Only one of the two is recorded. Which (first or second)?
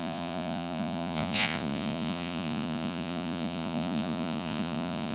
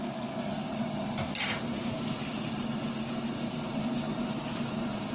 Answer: second